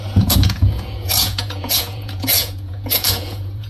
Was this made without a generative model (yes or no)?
no